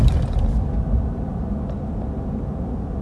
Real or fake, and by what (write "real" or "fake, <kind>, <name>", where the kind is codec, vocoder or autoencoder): real